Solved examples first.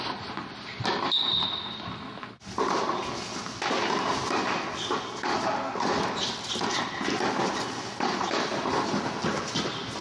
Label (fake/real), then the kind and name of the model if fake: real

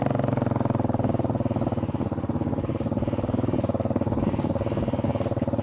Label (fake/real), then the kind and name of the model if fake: real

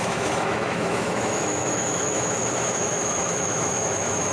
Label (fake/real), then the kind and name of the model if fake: fake, autoencoder, DAC-VAE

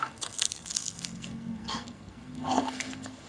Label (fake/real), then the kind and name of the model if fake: fake, codec, SNAC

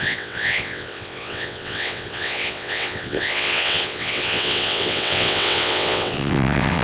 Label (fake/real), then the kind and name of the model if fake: fake, vocoder, WaveNeXt